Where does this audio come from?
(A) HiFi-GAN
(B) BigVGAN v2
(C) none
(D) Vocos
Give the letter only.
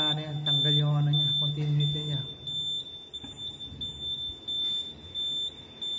C